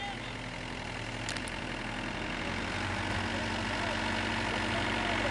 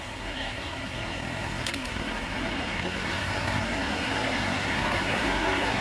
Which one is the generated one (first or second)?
second